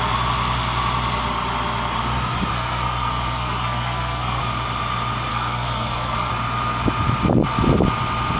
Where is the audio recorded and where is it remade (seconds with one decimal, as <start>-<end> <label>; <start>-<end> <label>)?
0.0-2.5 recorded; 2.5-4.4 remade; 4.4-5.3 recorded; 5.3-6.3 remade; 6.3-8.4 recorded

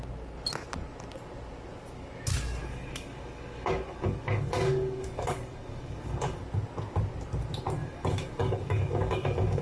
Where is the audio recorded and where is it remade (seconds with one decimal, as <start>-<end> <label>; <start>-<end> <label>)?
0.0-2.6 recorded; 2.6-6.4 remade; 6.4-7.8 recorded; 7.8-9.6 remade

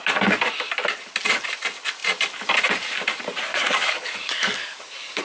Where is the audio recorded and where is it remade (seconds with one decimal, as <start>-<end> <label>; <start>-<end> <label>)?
0.0-3.5 recorded; 3.5-5.2 remade

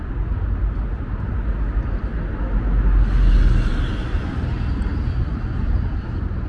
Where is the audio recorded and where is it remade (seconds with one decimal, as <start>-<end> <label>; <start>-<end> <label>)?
0.0-6.5 recorded

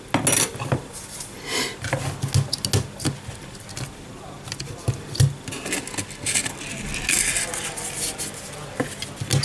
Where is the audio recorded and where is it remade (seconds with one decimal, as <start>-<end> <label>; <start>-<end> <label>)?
0.0-0.5 recorded; 0.5-1.2 remade; 1.2-9.4 recorded

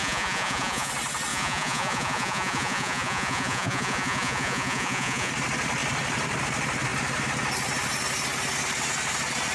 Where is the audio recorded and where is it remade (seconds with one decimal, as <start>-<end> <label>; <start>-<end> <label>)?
0.0-0.9 remade; 0.9-1.3 recorded; 1.3-5.3 remade; 5.3-9.5 recorded

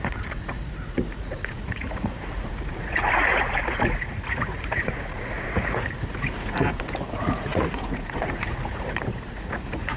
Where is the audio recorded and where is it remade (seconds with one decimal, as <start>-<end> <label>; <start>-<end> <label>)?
0.0-10.0 remade